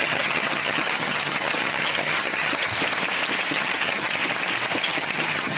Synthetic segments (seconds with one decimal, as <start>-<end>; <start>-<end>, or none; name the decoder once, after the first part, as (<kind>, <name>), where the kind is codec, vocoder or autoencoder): 0.0-2.7 (vocoder, HiFi-GAN); 3.5-4.2; 4.8-5.6